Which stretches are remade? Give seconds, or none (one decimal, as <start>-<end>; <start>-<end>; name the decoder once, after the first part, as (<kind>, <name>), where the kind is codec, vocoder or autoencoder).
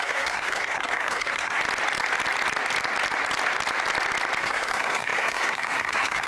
0.0-1.6 (codec, SNAC); 4.4-6.3